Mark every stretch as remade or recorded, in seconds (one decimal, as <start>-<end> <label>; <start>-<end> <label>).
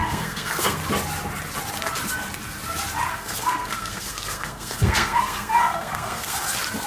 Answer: 0.0-0.8 remade; 0.8-3.1 recorded; 3.1-6.4 remade; 6.4-6.9 recorded